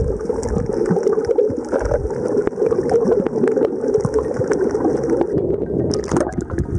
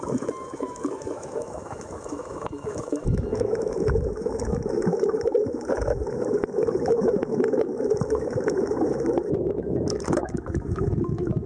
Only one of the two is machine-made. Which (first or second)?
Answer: second